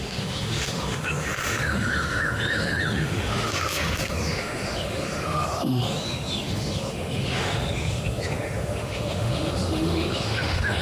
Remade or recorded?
remade